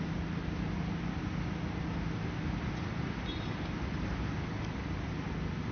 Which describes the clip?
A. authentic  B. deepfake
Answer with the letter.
A